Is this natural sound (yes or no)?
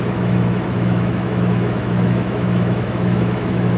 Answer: no